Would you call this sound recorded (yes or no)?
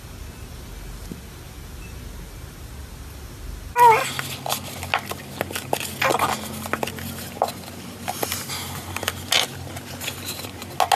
yes